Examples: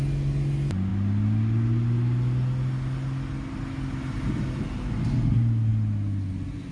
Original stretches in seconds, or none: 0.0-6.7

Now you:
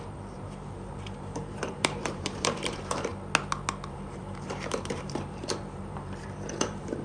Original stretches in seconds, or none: 3.1-3.9

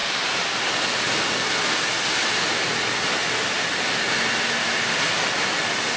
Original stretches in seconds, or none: 0.8-6.0

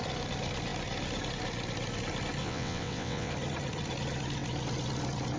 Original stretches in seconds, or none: 0.0-2.4; 3.3-5.4

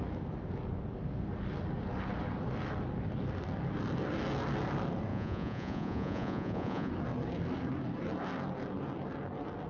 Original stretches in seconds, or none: 0.0-5.1; 6.9-9.7

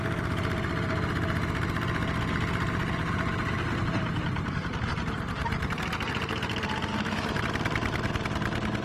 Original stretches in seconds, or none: 0.0-6.9; 7.4-8.8

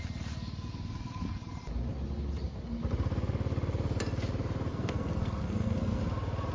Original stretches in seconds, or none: 0.0-4.7; 6.0-6.5